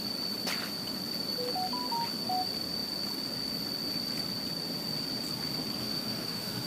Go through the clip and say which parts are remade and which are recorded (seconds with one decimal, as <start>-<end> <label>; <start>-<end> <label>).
0.0-5.8 recorded; 5.8-6.7 remade